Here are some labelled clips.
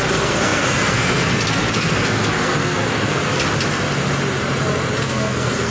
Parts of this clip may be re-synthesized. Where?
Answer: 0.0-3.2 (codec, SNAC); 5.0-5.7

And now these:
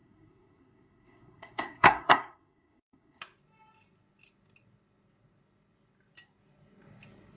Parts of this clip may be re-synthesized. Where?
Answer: 0.0-3.2 (codec, SNAC)

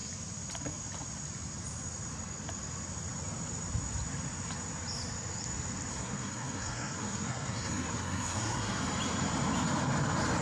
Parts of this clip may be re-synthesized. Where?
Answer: 5.9-8.8 (codec, SNAC)

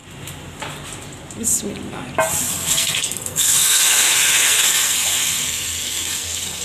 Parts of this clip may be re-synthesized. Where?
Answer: 2.5-6.6 (codec, SNAC)